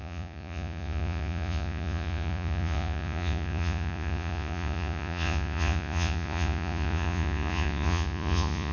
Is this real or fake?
fake